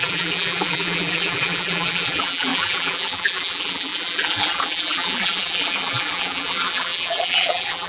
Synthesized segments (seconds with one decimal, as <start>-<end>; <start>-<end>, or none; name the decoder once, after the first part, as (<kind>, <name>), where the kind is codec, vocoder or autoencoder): 0.0-7.9 (vocoder, BigVGAN v2)